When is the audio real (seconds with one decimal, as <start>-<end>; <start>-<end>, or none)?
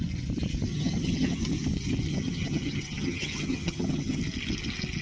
0.0-0.7; 1.4-2.1; 4.2-5.0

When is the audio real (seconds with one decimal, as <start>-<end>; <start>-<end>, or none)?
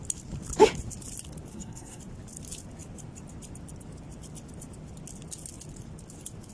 0.0-1.5; 2.0-6.5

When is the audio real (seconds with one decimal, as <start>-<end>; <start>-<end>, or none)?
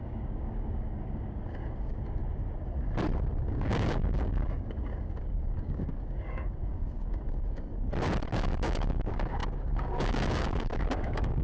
2.2-3.4; 7.7-8.3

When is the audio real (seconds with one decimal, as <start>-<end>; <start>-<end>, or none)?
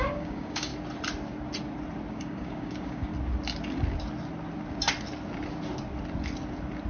0.7-2.1; 3.1-6.9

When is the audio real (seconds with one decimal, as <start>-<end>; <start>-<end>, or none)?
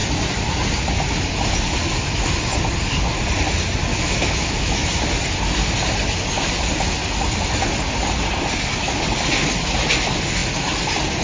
0.0-3.9; 4.9-11.2